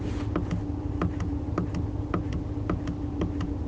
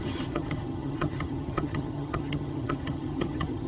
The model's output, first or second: second